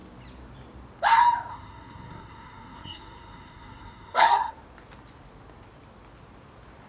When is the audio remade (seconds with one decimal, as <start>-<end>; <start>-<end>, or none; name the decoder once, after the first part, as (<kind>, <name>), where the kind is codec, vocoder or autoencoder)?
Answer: 1.5-4.5 (codec, SNAC)